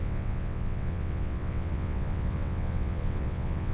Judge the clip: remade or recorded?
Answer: remade